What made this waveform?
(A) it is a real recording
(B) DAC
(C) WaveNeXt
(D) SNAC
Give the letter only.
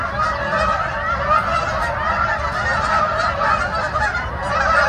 A